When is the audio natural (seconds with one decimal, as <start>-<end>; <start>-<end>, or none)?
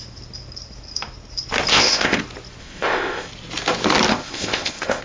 0.0-1.7; 2.2-2.6; 3.3-4.1